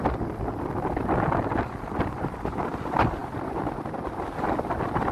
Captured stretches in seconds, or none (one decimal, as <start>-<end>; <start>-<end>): 0.0-5.1